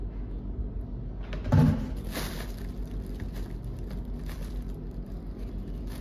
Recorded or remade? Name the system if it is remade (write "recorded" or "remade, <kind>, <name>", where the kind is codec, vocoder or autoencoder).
recorded